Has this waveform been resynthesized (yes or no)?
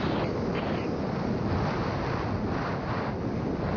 no